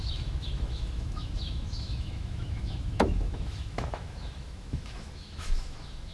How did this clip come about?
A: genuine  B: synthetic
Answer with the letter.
B